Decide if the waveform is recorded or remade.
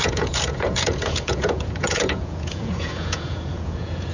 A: remade